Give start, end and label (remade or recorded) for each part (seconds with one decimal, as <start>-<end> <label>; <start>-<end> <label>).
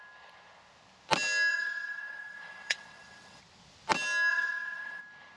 0.0-1.5 recorded; 1.5-3.4 remade; 3.4-4.3 recorded; 4.3-5.0 remade; 5.0-5.4 recorded